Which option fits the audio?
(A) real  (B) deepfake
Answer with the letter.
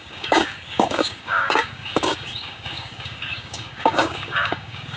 B